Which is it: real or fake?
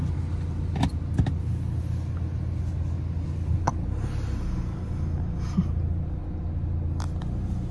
real